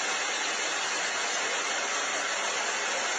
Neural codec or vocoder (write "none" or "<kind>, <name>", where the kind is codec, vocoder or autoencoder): none